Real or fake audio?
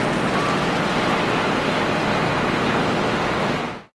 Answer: real